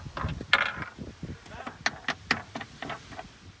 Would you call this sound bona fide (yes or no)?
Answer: yes